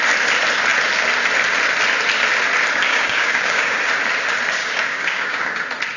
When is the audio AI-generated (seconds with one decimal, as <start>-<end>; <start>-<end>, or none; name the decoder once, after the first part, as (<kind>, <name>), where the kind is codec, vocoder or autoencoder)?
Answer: 2.9-3.8 (codec, DAC); 4.6-5.4